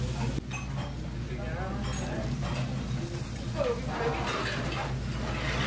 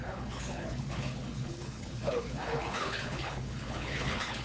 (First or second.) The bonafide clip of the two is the first